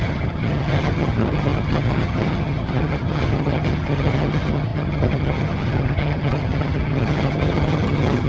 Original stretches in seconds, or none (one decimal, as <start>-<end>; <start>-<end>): none